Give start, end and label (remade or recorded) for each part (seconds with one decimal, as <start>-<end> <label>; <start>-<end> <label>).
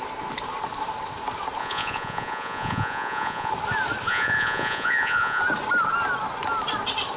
0.0-1.6 recorded; 1.6-3.5 remade; 3.5-4.1 recorded; 4.1-5.4 remade; 5.4-7.2 recorded